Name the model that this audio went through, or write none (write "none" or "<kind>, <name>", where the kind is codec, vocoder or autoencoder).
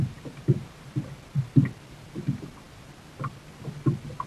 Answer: none